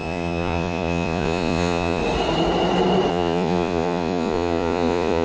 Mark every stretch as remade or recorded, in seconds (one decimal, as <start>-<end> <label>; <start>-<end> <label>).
0.0-2.0 remade; 2.0-3.1 recorded; 3.1-5.2 remade

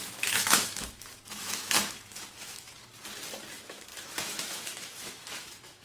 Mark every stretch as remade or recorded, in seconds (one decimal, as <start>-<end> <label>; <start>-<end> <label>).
0.0-2.7 remade; 2.7-3.5 recorded; 3.5-5.8 remade

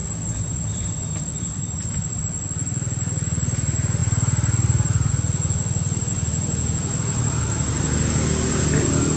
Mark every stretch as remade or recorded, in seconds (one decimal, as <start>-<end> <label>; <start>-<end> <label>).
0.0-2.2 remade; 2.2-4.0 recorded; 4.0-5.1 remade; 5.1-9.2 recorded

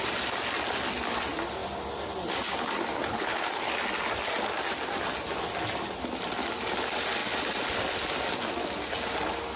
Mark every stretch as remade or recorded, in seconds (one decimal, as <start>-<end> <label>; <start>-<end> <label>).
0.0-3.1 recorded; 3.1-3.7 remade; 3.7-9.6 recorded

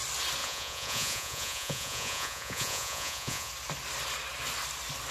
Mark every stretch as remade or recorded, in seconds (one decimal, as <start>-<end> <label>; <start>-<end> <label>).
0.0-0.4 recorded; 0.4-3.5 remade; 3.5-5.1 recorded